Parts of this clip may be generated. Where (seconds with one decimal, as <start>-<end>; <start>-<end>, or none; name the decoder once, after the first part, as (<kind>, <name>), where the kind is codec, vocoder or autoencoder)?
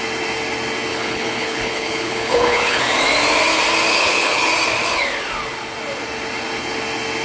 0.9-2.8 (codec, HILCodec); 3.9-4.5